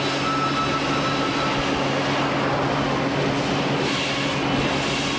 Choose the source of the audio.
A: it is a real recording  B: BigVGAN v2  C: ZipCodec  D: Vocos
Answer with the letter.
A